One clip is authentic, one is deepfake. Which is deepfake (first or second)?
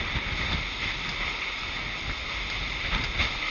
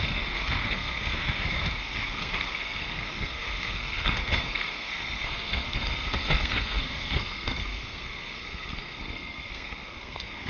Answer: second